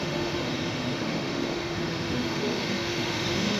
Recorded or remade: remade